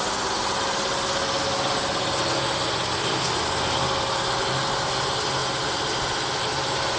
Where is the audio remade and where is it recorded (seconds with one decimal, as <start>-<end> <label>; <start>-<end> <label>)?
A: 0.0-7.0 recorded